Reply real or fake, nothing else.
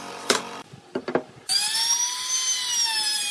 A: real